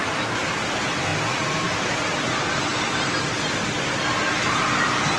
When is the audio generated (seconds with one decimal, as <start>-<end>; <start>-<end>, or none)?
none